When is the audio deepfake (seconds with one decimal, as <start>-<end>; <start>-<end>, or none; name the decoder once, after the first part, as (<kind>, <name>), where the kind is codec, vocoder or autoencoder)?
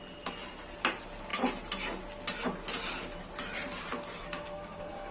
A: 4.2-5.1 (codec, SNAC)